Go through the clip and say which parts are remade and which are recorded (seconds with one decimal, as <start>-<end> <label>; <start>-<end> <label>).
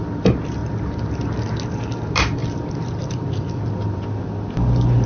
0.0-5.1 recorded